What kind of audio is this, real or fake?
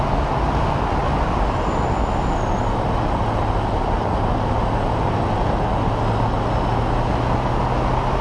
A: real